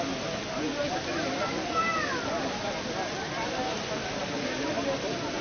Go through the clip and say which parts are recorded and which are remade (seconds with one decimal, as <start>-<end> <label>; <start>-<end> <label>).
0.0-5.4 recorded